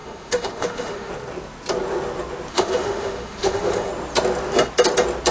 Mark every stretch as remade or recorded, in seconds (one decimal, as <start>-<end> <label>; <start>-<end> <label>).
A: 0.0-1.1 remade; 1.1-2.5 recorded; 2.5-3.9 remade; 3.9-5.3 recorded